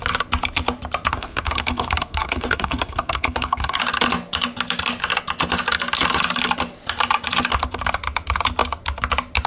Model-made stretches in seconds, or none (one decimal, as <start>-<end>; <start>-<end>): 1.1-3.8